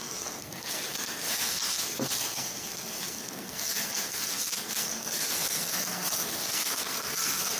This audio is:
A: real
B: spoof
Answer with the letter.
B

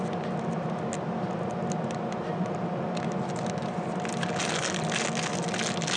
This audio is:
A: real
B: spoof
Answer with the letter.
A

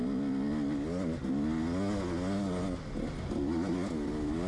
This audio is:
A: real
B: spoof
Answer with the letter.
A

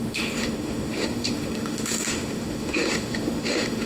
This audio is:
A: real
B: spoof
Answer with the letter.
B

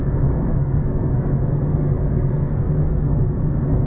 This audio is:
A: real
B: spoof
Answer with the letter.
B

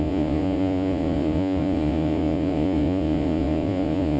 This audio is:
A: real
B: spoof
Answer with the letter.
B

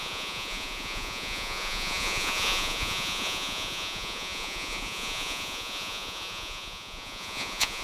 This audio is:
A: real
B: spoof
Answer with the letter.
B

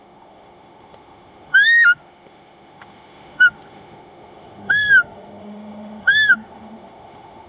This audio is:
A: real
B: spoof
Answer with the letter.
B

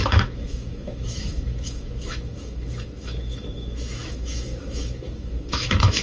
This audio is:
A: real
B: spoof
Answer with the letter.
B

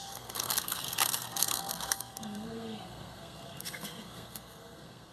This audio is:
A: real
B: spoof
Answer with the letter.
B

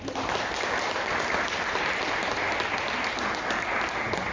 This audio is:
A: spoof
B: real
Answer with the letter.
B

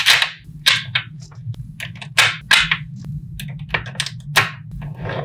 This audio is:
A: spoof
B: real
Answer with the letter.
B